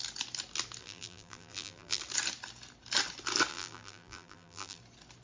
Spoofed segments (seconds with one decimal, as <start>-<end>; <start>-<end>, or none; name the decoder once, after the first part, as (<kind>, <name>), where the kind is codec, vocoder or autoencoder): 0.8-2.0 (vocoder, BigVGAN v2); 3.5-4.8